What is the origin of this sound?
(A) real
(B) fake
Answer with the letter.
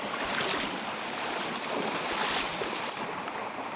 A